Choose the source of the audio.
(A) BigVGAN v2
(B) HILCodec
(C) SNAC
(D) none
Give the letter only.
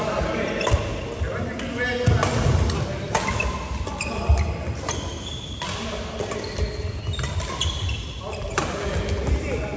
D